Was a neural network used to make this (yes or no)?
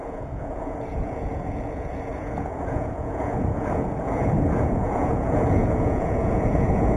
yes